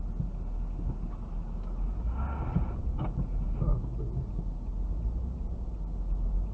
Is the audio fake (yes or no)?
no